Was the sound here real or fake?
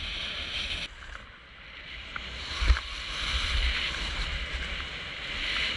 real